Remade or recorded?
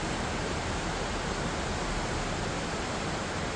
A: recorded